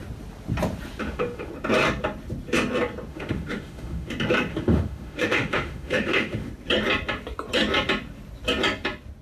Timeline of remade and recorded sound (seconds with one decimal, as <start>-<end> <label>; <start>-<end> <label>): 0.0-1.0 recorded; 1.0-1.5 remade; 1.5-3.1 recorded; 3.1-4.1 remade; 4.1-4.5 recorded; 4.5-6.5 remade; 6.5-9.2 recorded